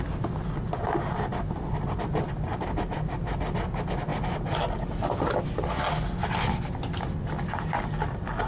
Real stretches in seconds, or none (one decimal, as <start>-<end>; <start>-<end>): 0.0-8.5